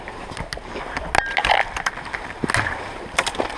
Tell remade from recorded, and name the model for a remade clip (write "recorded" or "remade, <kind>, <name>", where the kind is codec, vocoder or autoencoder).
recorded